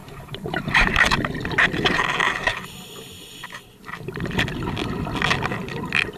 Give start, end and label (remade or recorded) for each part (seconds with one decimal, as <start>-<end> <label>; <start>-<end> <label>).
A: 0.0-0.6 remade; 0.6-6.2 recorded